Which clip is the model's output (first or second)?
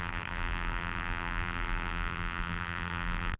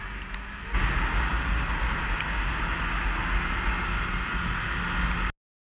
first